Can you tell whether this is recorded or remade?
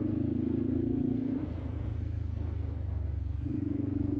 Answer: remade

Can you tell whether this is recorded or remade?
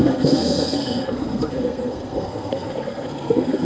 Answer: remade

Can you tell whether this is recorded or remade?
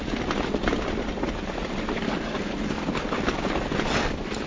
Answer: recorded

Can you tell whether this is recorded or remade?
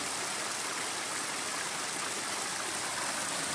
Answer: recorded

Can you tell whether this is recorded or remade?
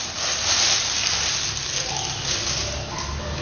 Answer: recorded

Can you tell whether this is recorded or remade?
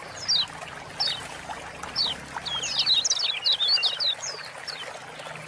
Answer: recorded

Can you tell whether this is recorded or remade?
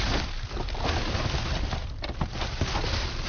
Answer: recorded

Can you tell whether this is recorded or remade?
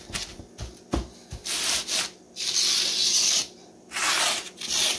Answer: recorded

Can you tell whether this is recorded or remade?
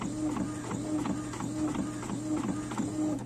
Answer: recorded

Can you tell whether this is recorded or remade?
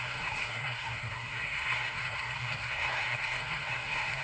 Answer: remade